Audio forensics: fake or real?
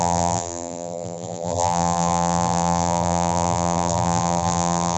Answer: fake